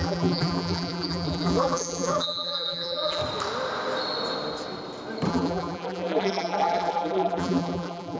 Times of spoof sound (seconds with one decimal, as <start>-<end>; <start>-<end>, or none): 0.0-3.2; 5.3-8.2